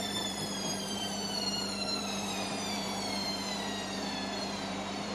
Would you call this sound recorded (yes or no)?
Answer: no